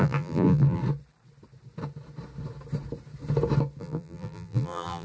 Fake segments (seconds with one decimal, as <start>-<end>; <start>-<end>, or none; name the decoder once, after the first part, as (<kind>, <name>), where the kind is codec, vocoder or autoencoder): 0.0-0.8 (vocoder, BigVGAN v2); 3.8-5.0